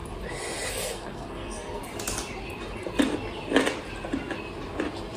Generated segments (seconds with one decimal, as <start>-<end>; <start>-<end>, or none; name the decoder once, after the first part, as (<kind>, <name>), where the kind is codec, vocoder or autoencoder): 0.7-1.8 (codec, SNAC)